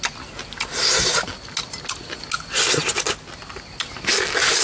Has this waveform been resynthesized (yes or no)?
no